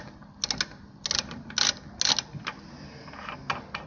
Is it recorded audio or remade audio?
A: recorded